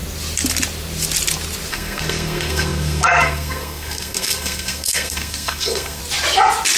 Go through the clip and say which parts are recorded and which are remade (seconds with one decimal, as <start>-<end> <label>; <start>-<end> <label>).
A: 0.0-1.7 recorded; 1.7-6.0 remade; 6.0-6.8 recorded